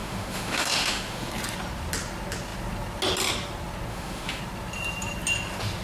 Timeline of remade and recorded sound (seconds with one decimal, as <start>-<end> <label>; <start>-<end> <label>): 0.0-1.3 remade; 1.3-3.9 recorded; 3.9-4.4 remade; 4.4-5.8 recorded